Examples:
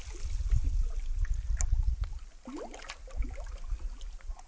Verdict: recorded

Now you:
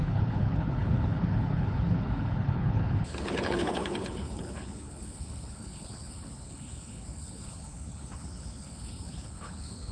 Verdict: remade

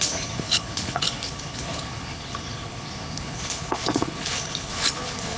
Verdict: remade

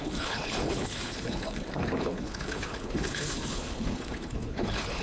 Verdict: remade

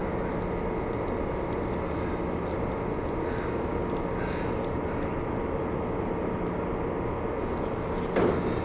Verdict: recorded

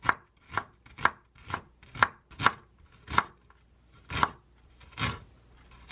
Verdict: recorded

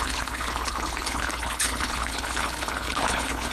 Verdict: remade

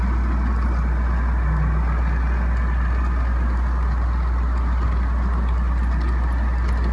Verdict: recorded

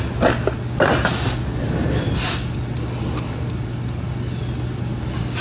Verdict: recorded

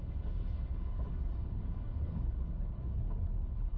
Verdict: remade